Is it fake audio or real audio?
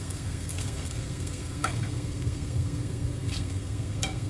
fake